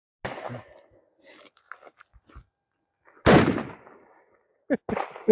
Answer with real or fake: real